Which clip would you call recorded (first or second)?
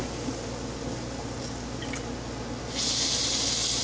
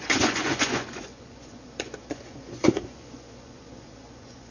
first